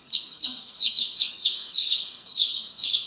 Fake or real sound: fake